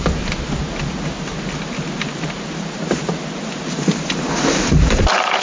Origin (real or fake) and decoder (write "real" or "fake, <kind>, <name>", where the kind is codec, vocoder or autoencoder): real